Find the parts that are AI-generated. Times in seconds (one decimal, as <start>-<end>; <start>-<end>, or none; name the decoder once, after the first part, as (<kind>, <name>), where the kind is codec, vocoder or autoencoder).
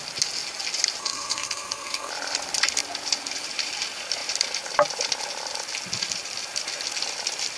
1.0-2.1 (codec, SNAC)